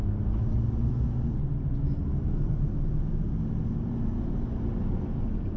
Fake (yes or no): no